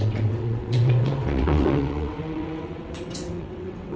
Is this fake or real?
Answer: fake